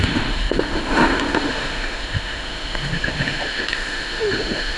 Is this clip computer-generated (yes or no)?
yes